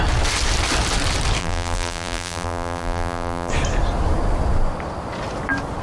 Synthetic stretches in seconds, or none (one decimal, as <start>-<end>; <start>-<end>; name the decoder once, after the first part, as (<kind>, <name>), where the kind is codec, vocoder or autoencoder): 1.4-3.5 (vocoder, BigVGAN v2)